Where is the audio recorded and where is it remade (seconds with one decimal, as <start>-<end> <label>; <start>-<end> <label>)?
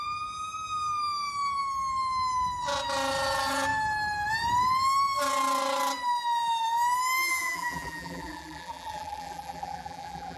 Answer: 0.0-7.3 recorded; 7.3-10.4 remade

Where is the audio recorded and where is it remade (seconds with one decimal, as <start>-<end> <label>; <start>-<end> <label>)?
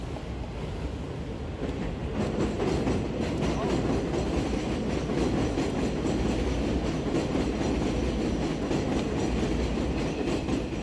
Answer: 0.0-10.8 recorded